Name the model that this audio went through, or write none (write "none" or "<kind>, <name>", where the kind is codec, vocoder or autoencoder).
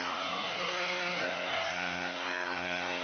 codec, SNAC